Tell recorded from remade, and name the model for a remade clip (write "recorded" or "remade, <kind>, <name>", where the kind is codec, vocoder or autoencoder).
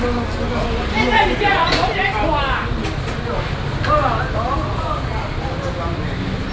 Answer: recorded